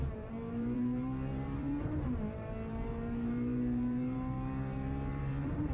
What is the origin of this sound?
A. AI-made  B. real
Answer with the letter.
A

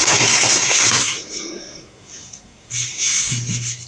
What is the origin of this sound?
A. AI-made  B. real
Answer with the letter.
A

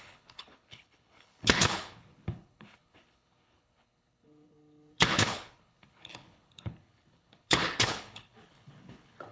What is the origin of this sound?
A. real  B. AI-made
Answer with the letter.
B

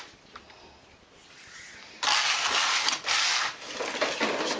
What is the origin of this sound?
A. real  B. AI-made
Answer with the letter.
A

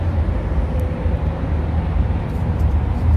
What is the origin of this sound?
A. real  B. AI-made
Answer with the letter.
B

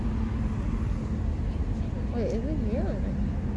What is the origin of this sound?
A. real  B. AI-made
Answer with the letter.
A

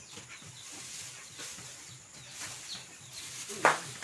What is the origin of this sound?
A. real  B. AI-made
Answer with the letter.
A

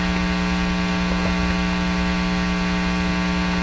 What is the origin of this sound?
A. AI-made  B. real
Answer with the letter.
B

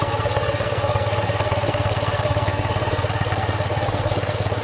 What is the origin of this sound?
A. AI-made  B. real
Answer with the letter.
A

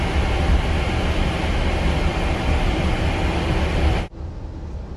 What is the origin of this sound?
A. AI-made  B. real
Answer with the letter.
B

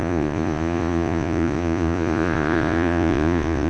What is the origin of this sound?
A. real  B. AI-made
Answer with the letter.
B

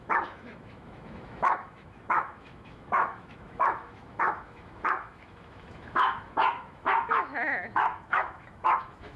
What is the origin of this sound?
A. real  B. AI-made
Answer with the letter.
B